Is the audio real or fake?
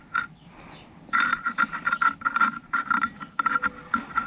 real